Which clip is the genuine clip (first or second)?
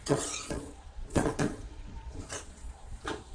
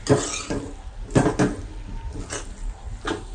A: second